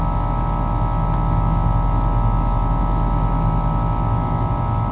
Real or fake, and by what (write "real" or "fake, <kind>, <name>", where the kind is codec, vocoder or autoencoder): real